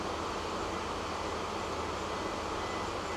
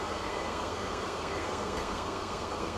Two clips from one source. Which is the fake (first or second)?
second